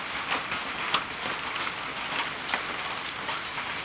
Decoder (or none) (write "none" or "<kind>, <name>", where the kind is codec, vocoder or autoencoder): none